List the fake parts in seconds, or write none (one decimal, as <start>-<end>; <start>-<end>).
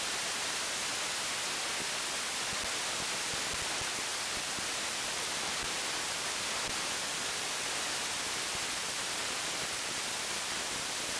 none